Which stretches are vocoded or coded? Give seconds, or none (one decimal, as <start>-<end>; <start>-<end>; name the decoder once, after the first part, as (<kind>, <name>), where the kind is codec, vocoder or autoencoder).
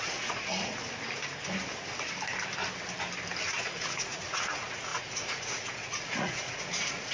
0.0-0.8 (vocoder, Vocos); 3.5-7.1